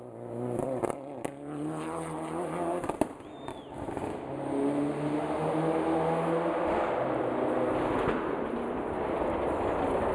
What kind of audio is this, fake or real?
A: real